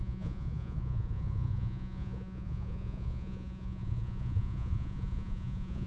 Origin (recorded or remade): remade